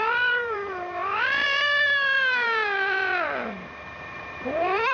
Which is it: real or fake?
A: fake